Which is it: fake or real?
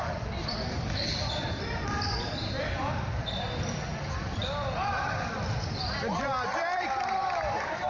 fake